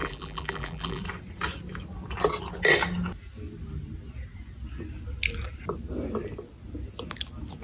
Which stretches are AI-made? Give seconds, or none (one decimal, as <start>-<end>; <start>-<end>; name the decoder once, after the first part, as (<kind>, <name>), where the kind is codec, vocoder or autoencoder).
0.0-1.0 (vocoder, BigVGAN v2)